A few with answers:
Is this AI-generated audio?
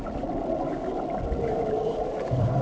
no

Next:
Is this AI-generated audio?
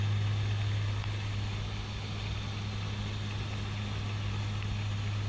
no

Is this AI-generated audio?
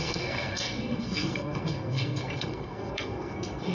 yes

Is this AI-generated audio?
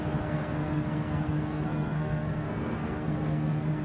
yes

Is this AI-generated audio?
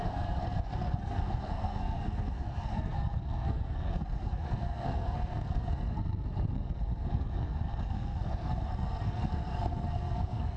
yes